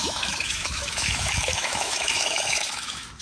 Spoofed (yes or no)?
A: yes